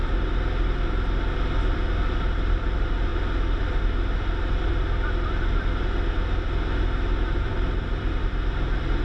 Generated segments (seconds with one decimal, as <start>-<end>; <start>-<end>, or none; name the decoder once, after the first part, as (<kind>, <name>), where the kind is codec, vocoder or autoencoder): 1.9-3.1 (vocoder, BigVGAN v2); 3.6-4.7; 7.4-9.0